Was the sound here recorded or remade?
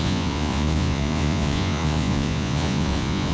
remade